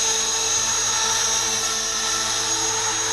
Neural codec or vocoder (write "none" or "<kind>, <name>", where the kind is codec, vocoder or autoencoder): none